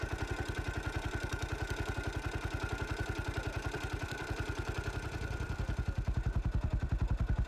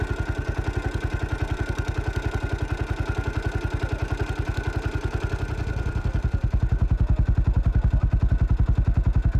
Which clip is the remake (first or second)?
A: first